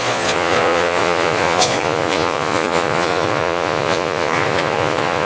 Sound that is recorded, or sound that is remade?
remade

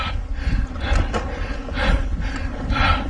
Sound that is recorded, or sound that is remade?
recorded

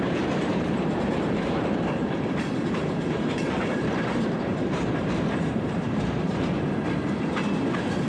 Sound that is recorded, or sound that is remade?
remade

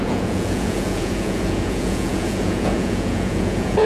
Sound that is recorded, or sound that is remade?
remade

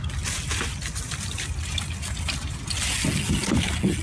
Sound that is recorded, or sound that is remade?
recorded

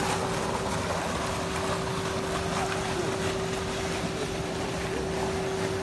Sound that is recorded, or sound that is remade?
recorded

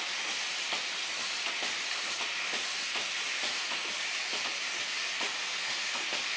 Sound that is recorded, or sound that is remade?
recorded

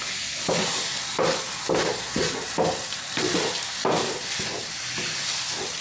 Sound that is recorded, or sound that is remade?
recorded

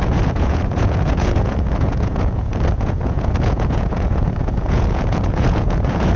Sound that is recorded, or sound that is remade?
remade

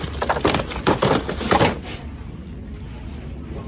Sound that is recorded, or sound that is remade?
recorded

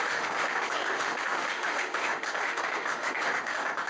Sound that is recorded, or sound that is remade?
remade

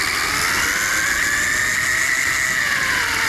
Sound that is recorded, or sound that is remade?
recorded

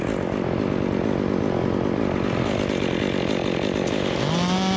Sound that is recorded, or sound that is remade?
recorded